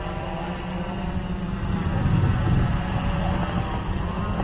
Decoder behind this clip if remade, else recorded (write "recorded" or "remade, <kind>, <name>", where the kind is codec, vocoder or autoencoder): recorded